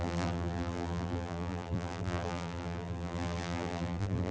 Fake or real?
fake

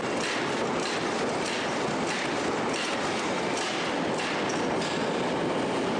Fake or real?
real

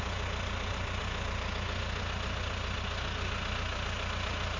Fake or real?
real